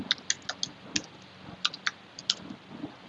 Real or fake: real